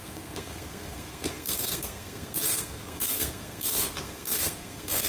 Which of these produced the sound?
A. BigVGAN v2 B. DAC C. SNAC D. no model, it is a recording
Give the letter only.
C